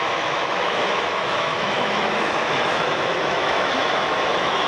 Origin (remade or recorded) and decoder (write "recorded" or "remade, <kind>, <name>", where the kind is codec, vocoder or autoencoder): remade, autoencoder, DAC-VAE